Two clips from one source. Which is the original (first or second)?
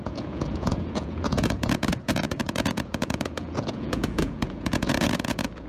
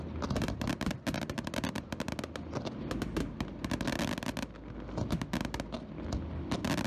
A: second